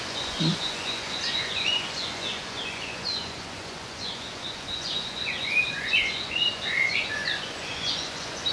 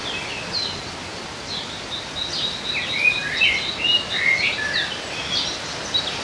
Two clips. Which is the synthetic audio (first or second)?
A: first